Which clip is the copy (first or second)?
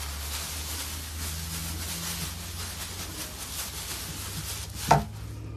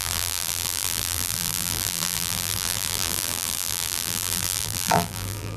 second